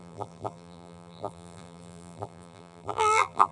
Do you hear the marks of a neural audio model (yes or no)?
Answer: yes